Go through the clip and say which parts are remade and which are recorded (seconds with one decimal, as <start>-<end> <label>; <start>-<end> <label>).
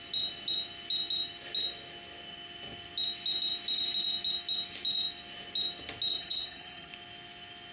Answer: 0.0-6.1 recorded; 6.1-6.9 remade; 6.9-7.7 recorded